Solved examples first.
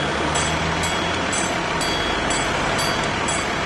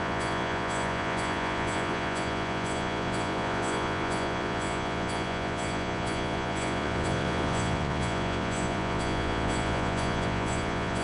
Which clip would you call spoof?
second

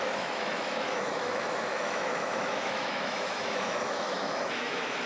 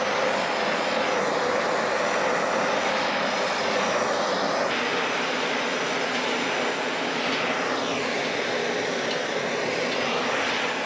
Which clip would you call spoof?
first